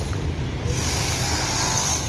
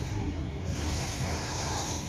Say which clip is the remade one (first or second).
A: second